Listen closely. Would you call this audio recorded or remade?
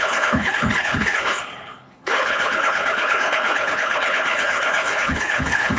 remade